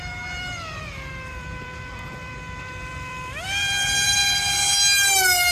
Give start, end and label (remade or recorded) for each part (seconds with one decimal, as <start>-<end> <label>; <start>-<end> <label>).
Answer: 0.0-4.2 remade; 4.2-5.5 recorded